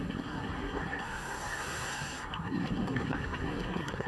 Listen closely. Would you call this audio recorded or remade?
remade